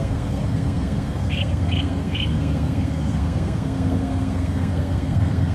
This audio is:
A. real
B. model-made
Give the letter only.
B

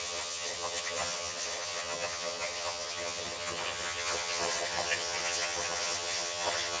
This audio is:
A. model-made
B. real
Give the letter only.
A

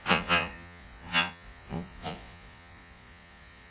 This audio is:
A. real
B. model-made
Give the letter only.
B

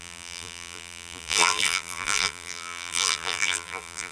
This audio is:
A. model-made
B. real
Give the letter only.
A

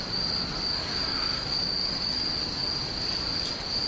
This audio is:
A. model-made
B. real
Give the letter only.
B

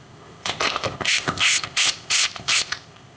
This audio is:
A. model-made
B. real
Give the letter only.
A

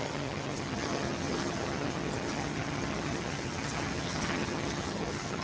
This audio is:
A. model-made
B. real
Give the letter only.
A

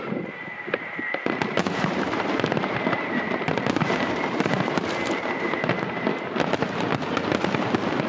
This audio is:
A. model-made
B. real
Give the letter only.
B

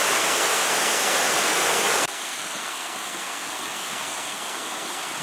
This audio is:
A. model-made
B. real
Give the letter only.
A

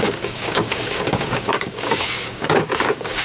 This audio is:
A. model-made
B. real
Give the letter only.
A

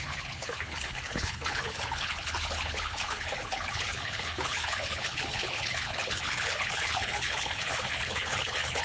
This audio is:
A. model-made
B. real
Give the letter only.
A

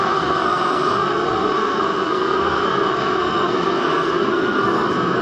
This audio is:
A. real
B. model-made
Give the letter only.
B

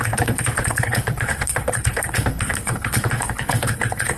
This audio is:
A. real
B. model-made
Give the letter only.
B